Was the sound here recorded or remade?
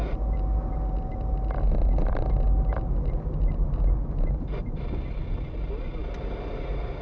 recorded